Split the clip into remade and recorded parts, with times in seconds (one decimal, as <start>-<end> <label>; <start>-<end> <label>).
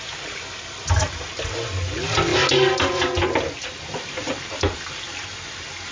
0.0-5.9 recorded